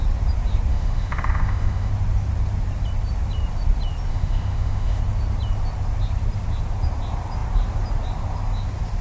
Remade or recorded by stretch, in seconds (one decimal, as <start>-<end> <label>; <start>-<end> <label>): 0.0-0.7 recorded; 0.7-1.9 remade; 1.9-4.1 recorded; 4.1-5.0 remade; 5.0-9.0 recorded

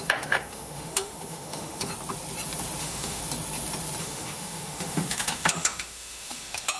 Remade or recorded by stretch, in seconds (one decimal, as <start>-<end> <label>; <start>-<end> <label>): 0.0-1.9 remade; 1.9-2.8 recorded; 2.8-3.2 remade; 3.2-4.0 recorded; 4.0-6.8 remade

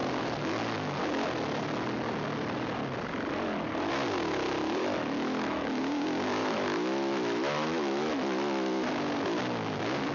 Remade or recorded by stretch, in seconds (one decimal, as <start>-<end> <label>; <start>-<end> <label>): 0.0-4.8 recorded; 4.8-5.8 remade; 5.8-6.4 recorded; 6.4-8.9 remade; 8.9-10.1 recorded

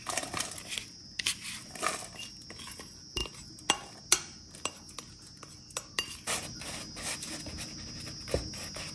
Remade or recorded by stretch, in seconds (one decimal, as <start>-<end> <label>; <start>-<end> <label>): 0.0-8.9 recorded